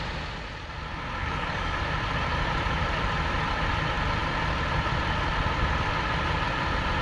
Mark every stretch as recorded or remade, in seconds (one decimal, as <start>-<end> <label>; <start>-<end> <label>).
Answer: 0.0-1.2 recorded; 1.2-1.8 remade; 1.8-7.0 recorded